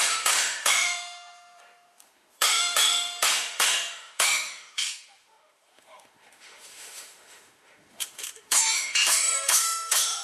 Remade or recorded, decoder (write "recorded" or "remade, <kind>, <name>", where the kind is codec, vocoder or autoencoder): remade, autoencoder, DAC-VAE